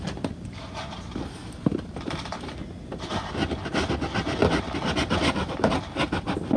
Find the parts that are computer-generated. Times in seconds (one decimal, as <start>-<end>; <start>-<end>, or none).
none